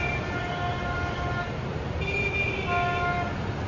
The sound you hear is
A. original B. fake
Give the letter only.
A